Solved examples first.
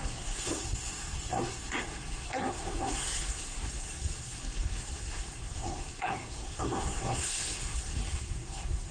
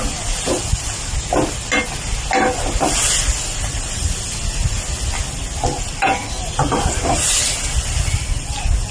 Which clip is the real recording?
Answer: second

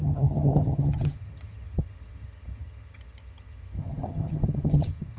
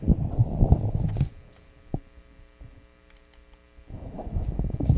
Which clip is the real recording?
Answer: second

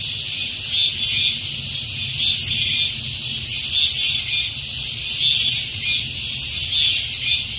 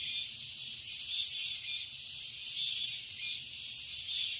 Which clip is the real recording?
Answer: first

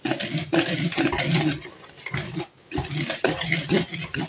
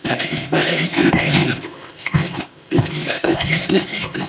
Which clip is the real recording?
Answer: first